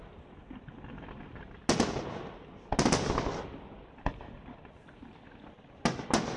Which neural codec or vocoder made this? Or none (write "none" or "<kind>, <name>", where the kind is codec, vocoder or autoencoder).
none